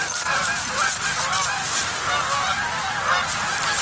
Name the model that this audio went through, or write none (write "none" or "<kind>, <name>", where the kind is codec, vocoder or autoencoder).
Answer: none